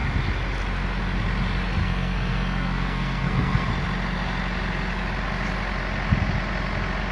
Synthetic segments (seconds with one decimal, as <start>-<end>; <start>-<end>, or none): 1.8-3.7